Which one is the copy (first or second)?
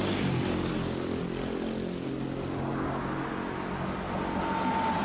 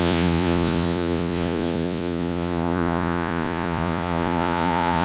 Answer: second